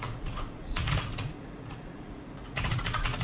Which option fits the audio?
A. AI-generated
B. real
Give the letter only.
A